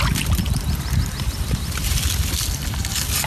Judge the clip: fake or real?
real